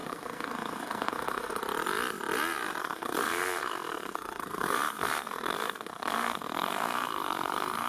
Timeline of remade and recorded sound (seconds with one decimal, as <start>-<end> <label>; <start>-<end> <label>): 0.0-1.6 remade; 1.6-2.8 recorded; 2.8-7.9 remade

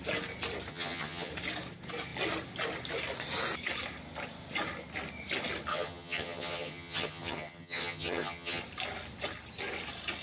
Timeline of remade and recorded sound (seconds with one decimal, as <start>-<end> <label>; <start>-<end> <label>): 0.0-0.7 recorded; 0.7-1.3 remade; 1.3-5.7 recorded; 5.7-8.6 remade; 8.6-10.2 recorded

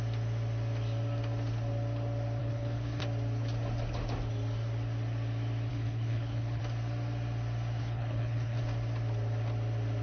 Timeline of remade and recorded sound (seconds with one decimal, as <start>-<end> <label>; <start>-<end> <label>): 0.0-2.4 recorded; 2.4-3.0 remade; 3.0-5.7 recorded; 5.7-6.6 remade; 6.6-7.8 recorded; 7.8-8.6 remade; 8.6-10.0 recorded